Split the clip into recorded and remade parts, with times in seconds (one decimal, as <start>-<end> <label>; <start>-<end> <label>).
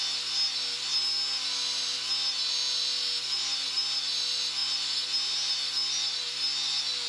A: 0.0-7.1 recorded